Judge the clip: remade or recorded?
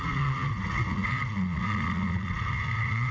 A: remade